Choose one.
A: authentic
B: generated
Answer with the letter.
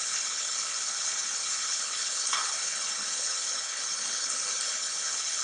B